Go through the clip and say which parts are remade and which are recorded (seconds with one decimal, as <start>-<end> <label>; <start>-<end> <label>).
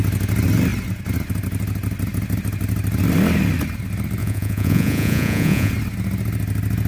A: 0.0-4.2 recorded; 4.2-5.7 remade; 5.7-6.9 recorded